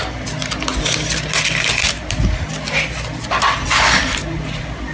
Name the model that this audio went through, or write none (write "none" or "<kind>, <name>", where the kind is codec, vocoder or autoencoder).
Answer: none